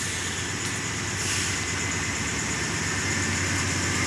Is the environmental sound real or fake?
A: real